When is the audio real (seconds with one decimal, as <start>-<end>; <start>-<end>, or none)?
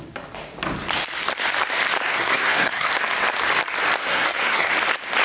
0.0-2.1; 2.9-4.0; 4.7-5.2